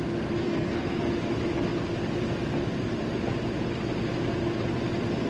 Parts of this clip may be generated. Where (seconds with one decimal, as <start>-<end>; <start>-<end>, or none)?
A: 0.4-1.1